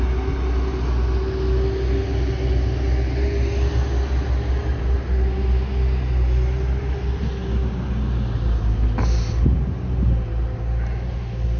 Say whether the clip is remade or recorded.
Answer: recorded